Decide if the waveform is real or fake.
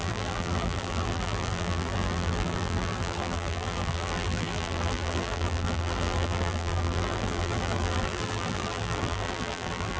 fake